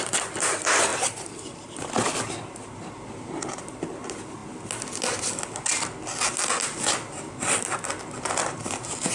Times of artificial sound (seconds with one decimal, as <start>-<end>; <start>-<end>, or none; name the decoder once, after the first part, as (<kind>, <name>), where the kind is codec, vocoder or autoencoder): 0.0-4.4 (vocoder, BigVGAN v2); 8.2-9.1

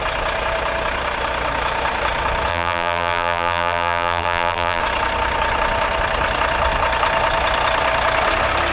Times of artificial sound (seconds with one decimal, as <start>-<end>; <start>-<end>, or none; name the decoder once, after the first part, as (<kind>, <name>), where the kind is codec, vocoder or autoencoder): 2.5-4.8 (vocoder, BigVGAN v2)